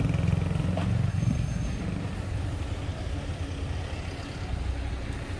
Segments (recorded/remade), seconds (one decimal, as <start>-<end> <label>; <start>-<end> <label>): 0.0-1.1 recorded; 1.1-1.8 remade; 1.8-5.4 recorded